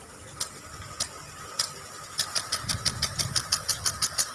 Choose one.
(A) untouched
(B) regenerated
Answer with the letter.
A